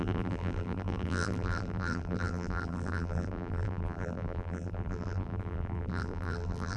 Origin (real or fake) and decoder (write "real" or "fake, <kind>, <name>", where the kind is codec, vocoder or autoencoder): fake, vocoder, BigVGAN v2